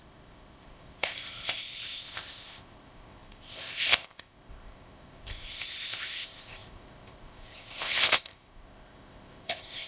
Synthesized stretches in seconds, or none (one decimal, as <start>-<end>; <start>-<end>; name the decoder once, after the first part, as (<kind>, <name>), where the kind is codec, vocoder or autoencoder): 0.0-9.9 (codec, ZipCodec)